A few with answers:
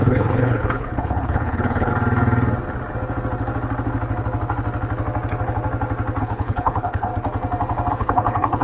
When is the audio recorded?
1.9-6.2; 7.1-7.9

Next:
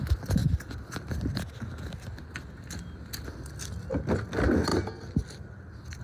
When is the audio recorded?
0.0-6.0

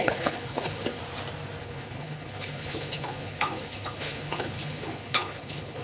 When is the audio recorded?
1.0-1.6

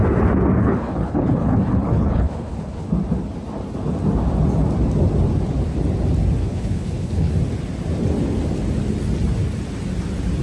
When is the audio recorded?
0.0-0.6; 2.9-6.4; 7.3-10.4

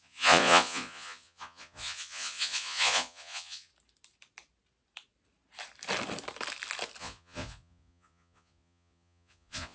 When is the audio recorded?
3.7-7.0

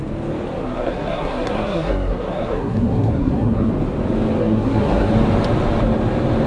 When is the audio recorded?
0.0-0.6; 3.7-4.4; 5.1-6.5